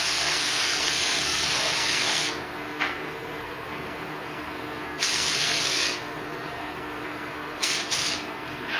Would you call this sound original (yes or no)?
no